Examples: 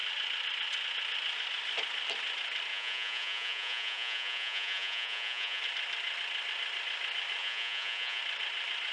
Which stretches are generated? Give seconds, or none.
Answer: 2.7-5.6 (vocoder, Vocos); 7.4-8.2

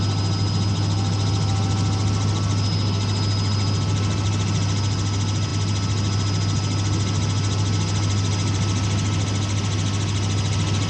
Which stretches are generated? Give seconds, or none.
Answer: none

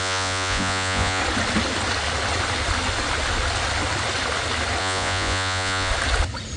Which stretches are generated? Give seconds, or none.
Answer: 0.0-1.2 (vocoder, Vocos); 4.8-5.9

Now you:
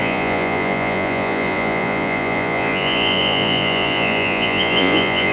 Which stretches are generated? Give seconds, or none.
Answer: 0.0-5.3 (vocoder, Vocos)

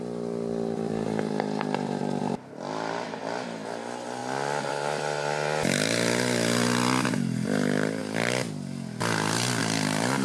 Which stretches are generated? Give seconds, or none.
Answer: none